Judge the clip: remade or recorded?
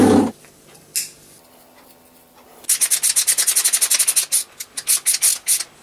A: recorded